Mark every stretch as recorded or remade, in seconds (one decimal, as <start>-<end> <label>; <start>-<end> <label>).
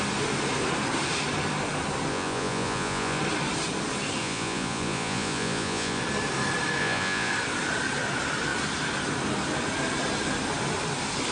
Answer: 0.0-2.1 recorded; 2.1-3.2 remade; 3.2-4.2 recorded; 4.2-6.0 remade; 6.0-6.8 recorded; 6.8-7.3 remade; 7.3-11.3 recorded